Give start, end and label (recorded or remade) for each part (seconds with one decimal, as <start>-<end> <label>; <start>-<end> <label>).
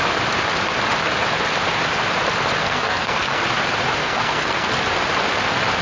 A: 0.0-2.6 recorded; 2.6-3.4 remade; 3.4-4.0 recorded; 4.0-4.7 remade; 4.7-5.8 recorded